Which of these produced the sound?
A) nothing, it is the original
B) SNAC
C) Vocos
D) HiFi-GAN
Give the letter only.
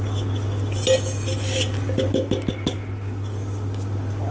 A